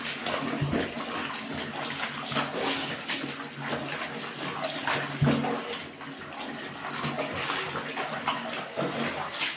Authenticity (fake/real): real